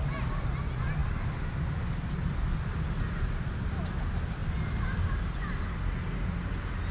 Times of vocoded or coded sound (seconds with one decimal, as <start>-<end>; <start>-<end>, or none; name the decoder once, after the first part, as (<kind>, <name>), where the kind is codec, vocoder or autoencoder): none